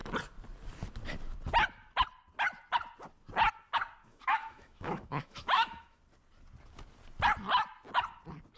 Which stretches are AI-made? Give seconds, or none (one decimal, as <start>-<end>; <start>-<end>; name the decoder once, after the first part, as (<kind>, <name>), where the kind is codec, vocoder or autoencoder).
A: 4.0-6.0 (autoencoder, DAC-VAE)